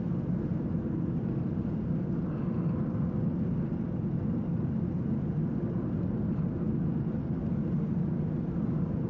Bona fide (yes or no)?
yes